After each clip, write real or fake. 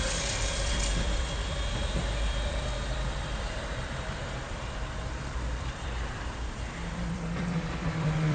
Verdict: fake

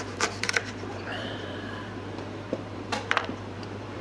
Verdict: fake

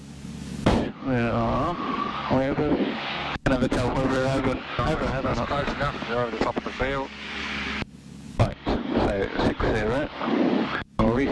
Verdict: fake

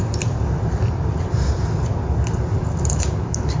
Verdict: fake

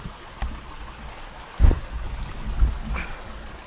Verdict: real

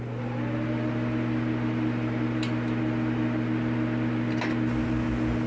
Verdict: real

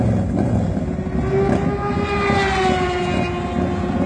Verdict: real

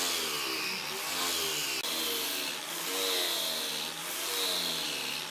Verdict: real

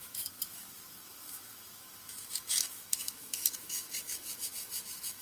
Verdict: fake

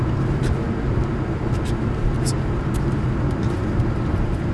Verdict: fake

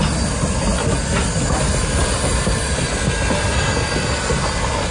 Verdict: real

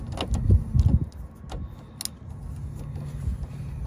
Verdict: real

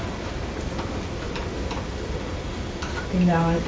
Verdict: real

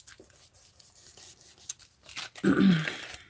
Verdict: real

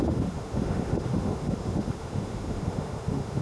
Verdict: fake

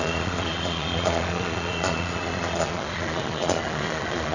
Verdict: fake